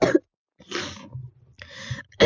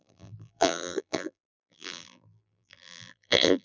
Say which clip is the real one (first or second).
first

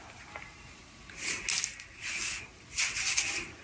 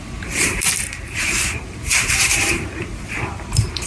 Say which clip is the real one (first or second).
first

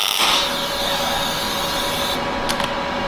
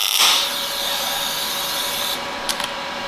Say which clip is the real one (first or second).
first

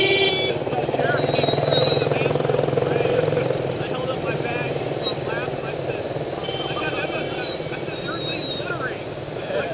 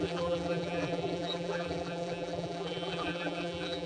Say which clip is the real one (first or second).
first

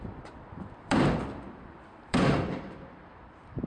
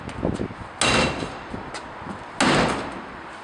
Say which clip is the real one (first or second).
second